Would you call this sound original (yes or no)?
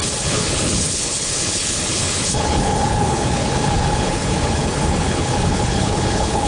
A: no